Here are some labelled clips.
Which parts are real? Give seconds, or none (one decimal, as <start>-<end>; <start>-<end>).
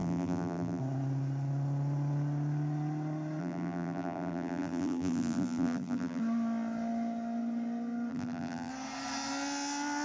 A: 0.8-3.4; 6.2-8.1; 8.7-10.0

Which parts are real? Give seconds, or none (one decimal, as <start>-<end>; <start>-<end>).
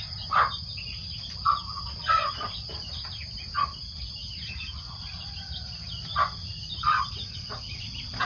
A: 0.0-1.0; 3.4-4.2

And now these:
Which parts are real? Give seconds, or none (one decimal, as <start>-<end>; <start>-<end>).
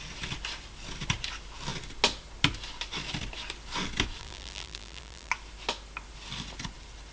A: 0.0-4.2; 5.3-7.1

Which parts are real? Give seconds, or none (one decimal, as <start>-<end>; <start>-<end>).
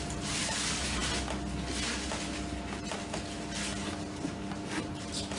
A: 1.0-4.2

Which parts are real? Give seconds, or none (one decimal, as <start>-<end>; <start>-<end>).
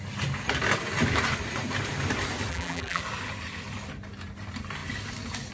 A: 0.0-2.5; 3.0-5.5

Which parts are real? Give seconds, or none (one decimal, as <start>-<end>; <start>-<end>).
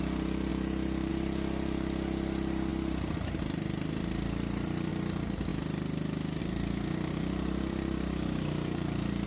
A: 5.5-6.4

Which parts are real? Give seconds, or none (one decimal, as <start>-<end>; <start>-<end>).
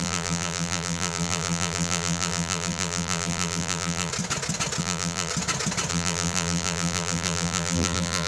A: 4.1-4.8; 5.3-5.9